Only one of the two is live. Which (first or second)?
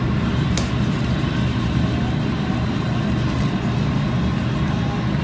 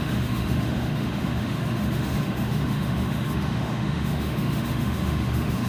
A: first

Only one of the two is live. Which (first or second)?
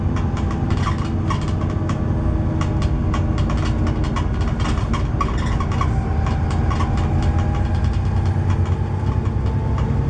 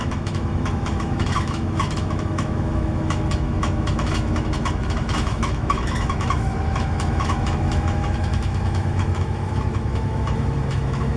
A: first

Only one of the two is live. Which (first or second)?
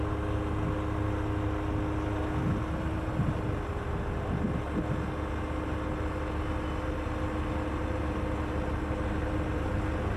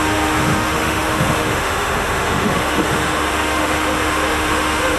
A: first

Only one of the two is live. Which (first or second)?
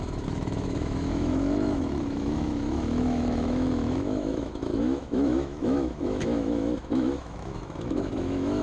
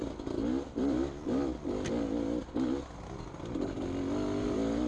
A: second